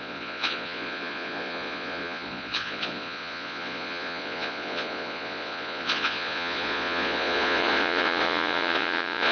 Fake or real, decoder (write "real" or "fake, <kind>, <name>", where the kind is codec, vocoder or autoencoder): fake, vocoder, Vocos